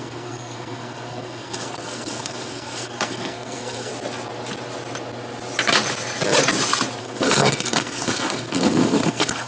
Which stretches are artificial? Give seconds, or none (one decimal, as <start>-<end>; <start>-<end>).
0.0-3.9; 7.0-9.5